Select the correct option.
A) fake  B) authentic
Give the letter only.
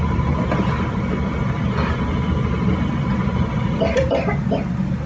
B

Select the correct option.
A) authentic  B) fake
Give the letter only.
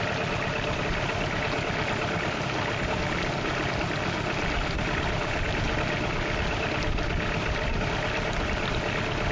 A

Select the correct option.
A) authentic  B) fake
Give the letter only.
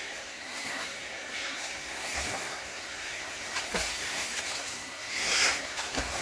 B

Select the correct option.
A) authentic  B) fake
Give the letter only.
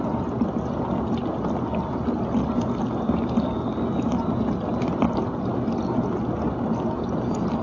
A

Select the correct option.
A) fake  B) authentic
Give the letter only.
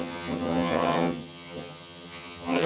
A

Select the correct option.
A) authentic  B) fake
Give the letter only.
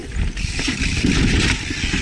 A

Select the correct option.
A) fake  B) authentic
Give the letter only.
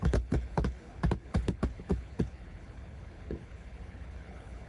A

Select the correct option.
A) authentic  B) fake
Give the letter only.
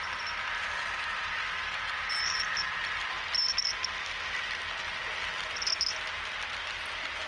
A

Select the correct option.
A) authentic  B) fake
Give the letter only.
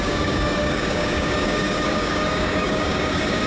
B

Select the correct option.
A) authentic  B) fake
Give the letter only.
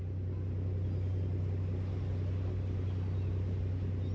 A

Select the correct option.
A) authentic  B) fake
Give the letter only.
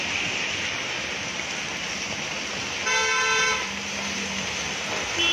A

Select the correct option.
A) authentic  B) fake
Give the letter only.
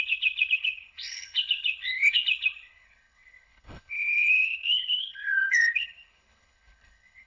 B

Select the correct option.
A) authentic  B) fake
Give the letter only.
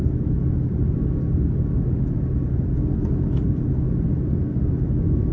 A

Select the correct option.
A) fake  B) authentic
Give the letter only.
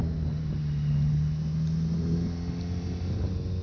B